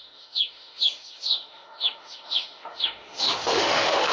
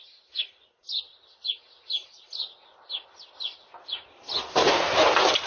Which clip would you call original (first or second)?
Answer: second